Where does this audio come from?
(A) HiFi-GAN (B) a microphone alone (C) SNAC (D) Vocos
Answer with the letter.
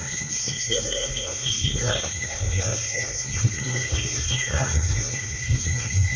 C